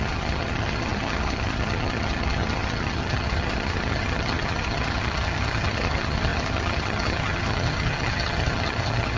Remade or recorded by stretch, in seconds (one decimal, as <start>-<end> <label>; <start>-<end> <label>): 0.0-9.2 remade

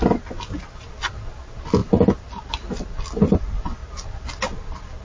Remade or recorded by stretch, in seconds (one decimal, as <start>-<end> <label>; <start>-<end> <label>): 0.0-5.0 recorded

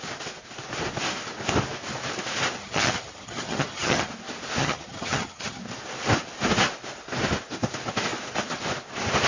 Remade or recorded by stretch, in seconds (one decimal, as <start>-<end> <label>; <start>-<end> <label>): 0.0-2.6 recorded; 2.6-4.1 remade; 4.1-4.6 recorded; 4.6-5.6 remade; 5.6-9.3 recorded

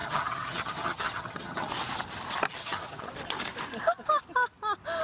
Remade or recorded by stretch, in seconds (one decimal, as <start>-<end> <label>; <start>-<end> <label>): 0.0-1.7 remade; 1.7-2.6 recorded; 2.6-3.1 remade; 3.1-5.0 recorded